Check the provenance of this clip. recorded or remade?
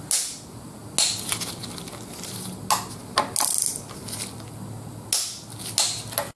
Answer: recorded